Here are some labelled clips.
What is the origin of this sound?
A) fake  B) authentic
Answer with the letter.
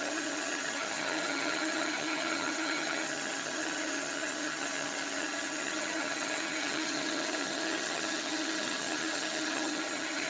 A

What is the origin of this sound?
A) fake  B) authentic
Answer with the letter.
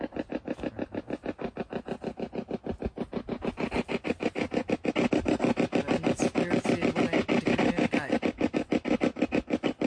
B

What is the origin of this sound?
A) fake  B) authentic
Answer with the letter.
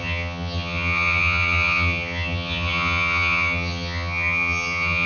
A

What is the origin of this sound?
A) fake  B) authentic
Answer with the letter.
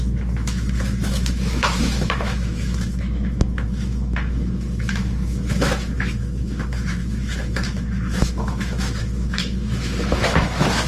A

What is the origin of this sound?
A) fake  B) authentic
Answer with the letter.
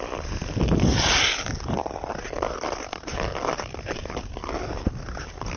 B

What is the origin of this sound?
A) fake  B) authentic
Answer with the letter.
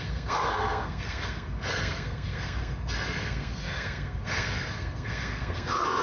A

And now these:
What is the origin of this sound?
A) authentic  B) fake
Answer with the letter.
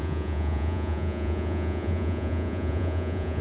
B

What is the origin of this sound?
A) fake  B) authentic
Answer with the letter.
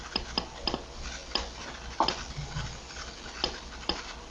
B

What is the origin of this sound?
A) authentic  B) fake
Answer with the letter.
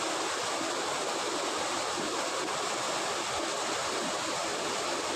A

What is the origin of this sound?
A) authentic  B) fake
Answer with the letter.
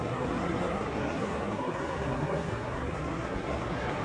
B